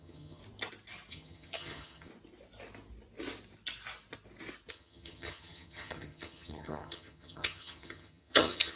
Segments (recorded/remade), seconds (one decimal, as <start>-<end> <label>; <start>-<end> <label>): 0.0-0.4 remade; 0.4-1.1 recorded; 1.1-2.1 remade; 2.1-4.7 recorded; 4.7-8.8 remade